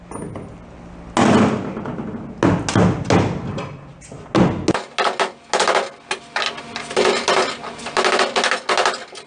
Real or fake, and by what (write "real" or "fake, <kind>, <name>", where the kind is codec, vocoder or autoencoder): real